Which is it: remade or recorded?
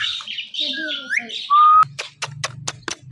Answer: recorded